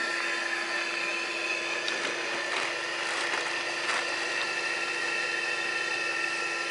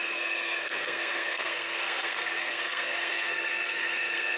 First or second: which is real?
first